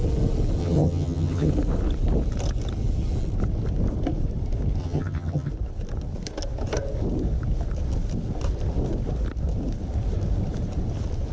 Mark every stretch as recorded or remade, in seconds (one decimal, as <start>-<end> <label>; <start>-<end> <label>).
0.0-0.6 recorded; 0.6-1.5 remade; 1.5-4.8 recorded; 4.8-5.5 remade; 5.5-11.3 recorded